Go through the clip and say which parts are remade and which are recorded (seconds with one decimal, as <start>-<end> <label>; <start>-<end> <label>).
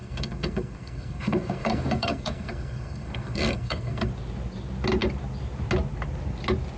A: 0.0-4.1 remade; 4.1-6.8 recorded